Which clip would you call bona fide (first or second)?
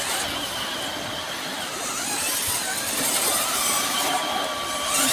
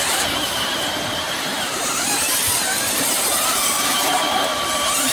first